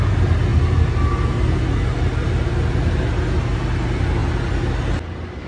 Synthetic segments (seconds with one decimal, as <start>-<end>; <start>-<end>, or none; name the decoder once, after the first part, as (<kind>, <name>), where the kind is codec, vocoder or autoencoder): none